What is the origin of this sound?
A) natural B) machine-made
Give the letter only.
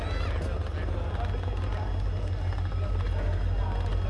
A